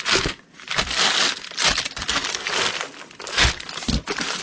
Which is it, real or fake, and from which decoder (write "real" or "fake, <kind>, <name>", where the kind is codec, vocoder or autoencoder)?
real